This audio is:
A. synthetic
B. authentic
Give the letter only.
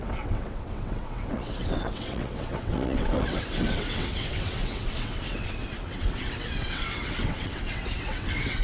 A